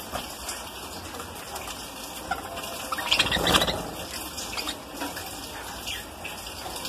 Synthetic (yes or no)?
no